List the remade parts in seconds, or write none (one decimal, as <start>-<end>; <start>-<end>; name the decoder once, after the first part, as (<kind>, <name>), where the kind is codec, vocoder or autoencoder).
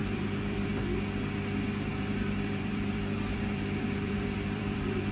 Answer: 0.0-0.7 (vocoder, BigVGAN v2); 1.9-5.1